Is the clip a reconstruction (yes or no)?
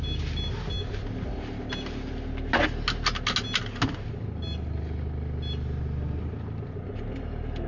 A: no